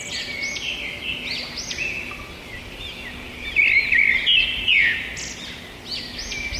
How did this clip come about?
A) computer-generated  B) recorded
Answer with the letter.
B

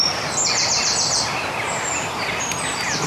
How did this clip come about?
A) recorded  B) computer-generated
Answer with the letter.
A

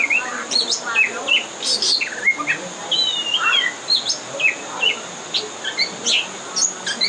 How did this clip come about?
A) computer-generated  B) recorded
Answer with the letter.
B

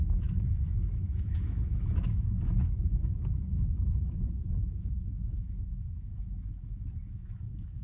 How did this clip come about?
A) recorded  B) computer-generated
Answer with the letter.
B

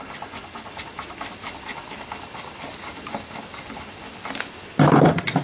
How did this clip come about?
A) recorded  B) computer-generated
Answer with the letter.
A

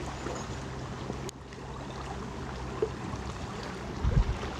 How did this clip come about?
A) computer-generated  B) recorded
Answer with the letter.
B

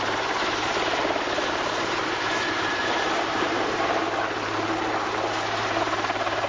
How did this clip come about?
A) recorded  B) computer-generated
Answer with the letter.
B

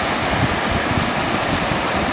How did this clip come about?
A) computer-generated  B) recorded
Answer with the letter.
B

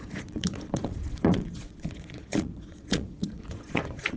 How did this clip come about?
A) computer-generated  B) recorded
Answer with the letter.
A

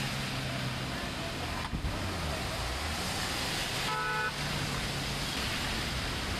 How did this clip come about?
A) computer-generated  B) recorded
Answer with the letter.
B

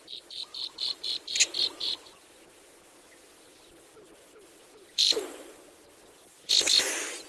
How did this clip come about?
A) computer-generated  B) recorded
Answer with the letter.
B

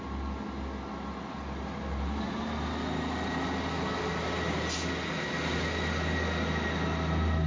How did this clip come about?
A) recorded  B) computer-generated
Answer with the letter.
A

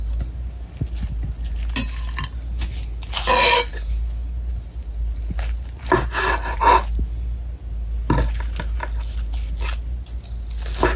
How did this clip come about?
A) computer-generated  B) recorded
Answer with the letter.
B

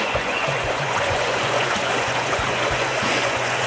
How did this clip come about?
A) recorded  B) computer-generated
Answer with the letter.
B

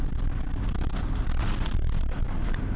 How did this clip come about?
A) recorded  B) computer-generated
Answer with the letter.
A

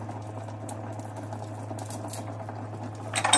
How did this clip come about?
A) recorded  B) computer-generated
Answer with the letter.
A